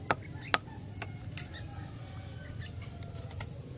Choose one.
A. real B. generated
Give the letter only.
A